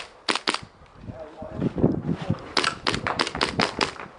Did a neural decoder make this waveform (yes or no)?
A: no